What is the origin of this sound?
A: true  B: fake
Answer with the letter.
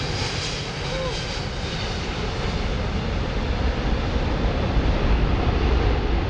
A